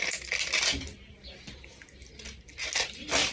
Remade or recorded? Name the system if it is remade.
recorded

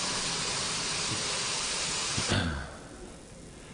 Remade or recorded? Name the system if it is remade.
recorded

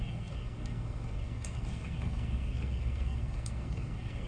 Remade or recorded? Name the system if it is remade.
remade, codec, SNAC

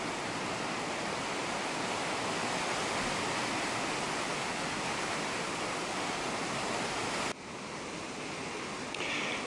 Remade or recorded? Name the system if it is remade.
recorded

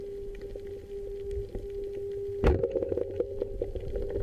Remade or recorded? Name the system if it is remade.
recorded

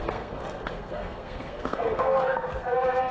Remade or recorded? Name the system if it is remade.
remade, codec, SNAC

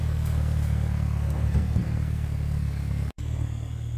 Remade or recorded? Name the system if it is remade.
remade, codec, SNAC